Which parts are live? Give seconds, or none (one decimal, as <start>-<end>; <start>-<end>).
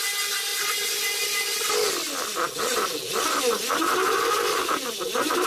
0.0-5.5